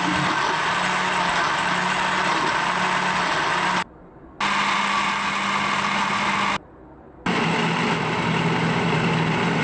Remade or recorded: recorded